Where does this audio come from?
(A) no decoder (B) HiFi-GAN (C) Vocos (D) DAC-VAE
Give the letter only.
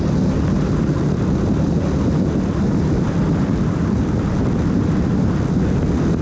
A